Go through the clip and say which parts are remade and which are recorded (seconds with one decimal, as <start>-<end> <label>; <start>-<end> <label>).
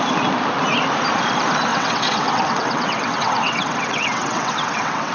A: 0.0-1.7 recorded; 1.7-5.1 remade